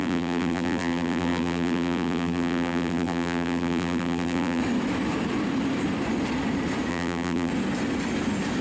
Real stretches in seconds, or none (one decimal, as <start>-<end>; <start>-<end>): 4.6-6.9; 7.5-8.6